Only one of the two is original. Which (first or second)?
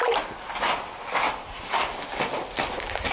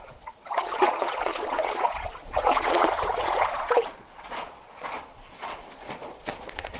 first